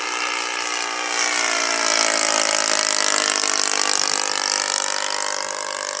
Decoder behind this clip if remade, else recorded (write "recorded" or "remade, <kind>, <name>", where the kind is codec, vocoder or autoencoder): recorded